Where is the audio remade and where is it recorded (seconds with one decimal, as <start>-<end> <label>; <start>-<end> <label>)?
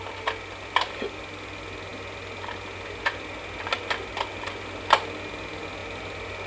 0.0-6.5 recorded